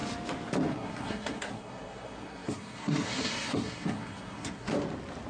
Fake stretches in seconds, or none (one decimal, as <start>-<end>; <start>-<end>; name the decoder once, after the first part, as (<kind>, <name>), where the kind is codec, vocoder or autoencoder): 0.7-4.7 (codec, SNAC)